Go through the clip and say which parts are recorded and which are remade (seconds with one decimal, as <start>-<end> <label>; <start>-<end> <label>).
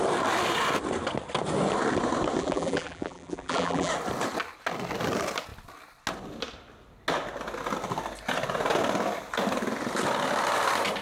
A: 0.0-2.4 recorded; 2.4-3.9 remade; 3.9-11.0 recorded